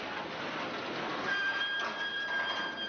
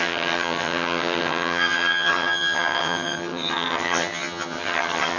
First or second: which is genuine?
first